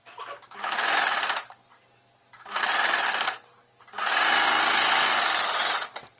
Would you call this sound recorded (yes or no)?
yes